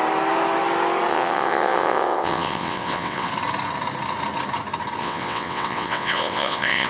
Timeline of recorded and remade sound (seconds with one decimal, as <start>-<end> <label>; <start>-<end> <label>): 0.0-1.1 recorded; 1.1-3.3 remade; 3.3-5.0 recorded; 5.0-6.9 remade